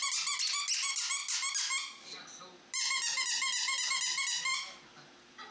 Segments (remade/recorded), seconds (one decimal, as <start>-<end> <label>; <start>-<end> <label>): 0.0-5.5 recorded